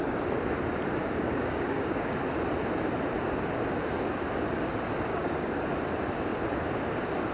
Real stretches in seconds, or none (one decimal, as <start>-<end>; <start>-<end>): 0.0-1.0; 2.2-5.1; 5.8-7.3